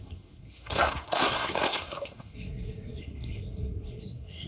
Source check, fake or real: fake